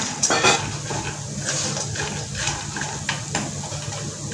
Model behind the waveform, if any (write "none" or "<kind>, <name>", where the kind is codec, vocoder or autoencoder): none